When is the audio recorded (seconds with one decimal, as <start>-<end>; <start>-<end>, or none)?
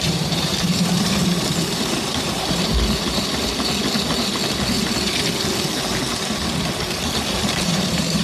1.2-1.7; 2.7-7.6